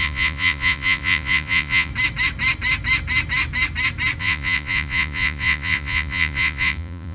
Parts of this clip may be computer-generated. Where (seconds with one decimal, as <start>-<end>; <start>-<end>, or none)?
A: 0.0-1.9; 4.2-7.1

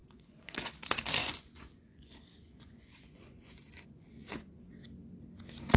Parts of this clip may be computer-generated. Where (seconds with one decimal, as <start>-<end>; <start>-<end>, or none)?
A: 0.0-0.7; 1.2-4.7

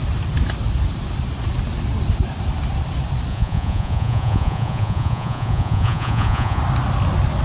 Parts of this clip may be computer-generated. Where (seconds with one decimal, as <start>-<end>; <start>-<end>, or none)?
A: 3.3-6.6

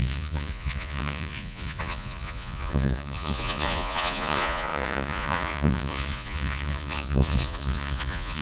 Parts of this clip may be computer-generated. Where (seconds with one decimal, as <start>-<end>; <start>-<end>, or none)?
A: 0.0-8.4